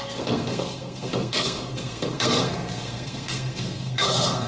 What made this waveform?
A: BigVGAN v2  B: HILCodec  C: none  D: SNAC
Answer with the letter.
D